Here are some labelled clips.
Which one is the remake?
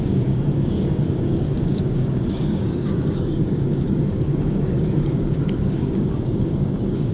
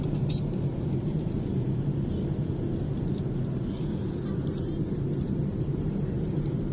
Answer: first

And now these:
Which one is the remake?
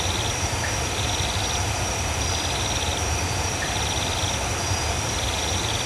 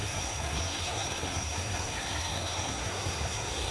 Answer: second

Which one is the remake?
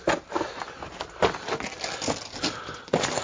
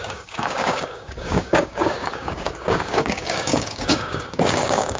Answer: second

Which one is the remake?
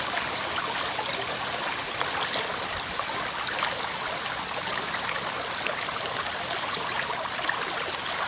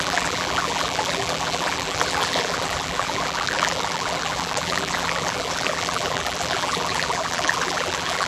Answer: second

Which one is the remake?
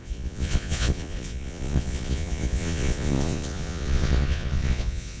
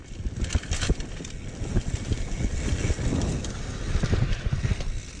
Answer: first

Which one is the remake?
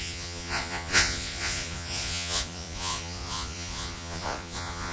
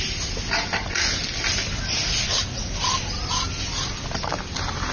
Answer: first